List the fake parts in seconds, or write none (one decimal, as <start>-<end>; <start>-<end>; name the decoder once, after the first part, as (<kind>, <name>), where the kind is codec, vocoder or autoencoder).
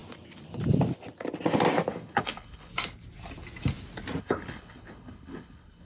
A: 1.9-2.7 (codec, HILCodec); 4.2-5.9